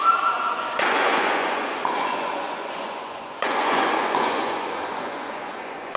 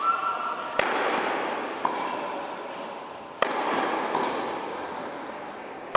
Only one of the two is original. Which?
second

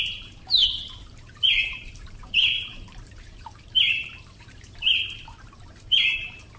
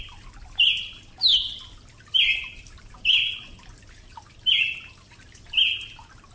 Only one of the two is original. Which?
second